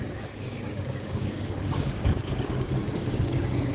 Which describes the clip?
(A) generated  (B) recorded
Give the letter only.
A